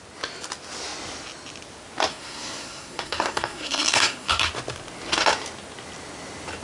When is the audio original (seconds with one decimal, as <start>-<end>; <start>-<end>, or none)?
0.0-2.1; 4.5-6.6